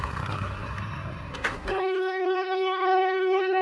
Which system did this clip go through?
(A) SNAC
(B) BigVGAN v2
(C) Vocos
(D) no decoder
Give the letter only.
A